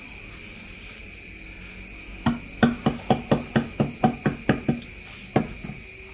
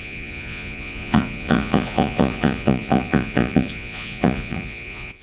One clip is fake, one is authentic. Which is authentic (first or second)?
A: first